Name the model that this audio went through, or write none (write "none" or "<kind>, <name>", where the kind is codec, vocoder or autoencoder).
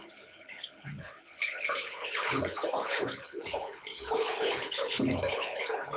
codec, HILCodec